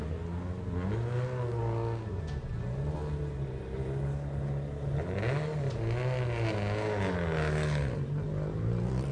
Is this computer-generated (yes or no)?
no